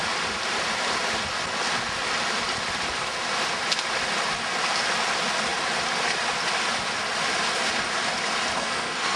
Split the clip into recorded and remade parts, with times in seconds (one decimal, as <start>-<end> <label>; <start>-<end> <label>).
0.0-8.6 recorded; 8.6-9.2 remade